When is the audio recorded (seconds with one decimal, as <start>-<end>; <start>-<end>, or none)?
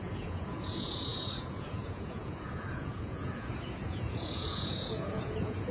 none